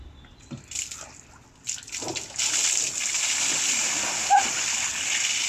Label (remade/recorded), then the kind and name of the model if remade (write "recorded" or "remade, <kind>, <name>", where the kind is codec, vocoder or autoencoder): recorded